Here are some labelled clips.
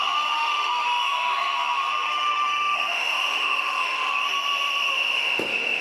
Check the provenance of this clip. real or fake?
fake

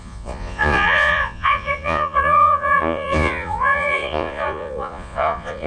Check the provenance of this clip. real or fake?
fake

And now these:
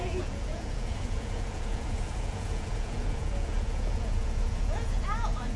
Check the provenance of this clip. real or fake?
fake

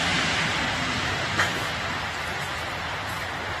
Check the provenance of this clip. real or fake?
fake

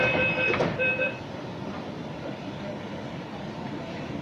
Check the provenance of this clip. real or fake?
fake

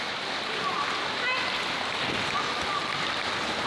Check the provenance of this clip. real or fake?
real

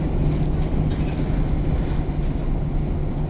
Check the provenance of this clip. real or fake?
real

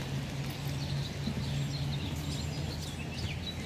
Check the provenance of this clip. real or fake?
real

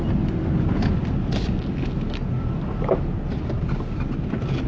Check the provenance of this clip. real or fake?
real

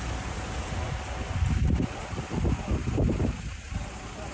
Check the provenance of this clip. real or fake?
real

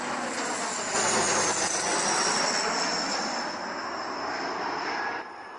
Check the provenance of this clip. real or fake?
real